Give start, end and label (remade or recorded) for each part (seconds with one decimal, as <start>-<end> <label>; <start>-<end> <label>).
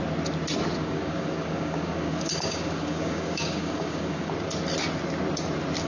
0.0-0.8 recorded; 0.8-4.3 remade; 4.3-5.9 recorded